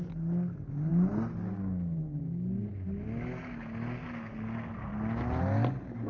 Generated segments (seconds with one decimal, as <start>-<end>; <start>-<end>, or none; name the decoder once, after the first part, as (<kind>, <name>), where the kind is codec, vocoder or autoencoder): none